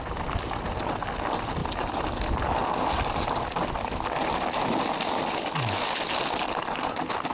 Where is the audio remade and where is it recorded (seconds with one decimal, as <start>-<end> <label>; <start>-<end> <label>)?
0.0-7.3 recorded